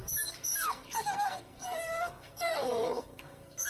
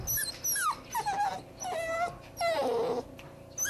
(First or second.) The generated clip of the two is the first